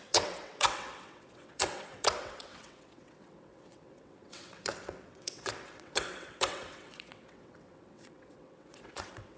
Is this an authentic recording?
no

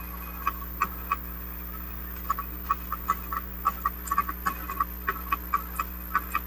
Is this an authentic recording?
yes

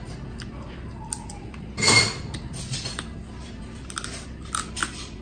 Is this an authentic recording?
yes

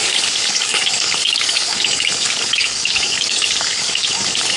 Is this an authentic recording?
no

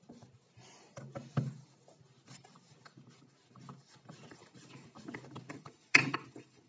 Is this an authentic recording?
yes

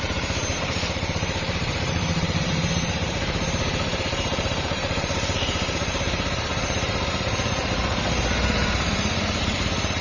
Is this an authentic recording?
no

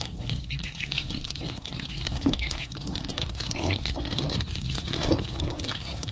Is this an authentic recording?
no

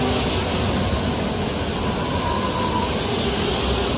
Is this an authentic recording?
yes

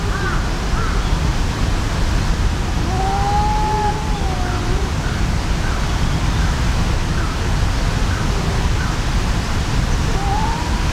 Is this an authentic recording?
yes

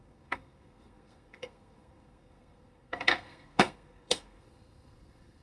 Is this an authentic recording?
no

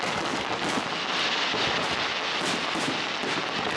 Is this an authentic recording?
yes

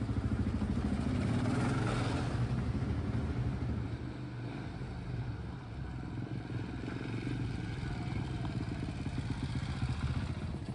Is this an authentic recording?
yes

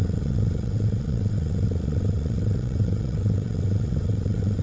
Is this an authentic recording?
no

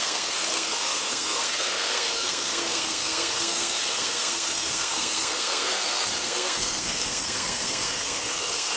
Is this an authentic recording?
no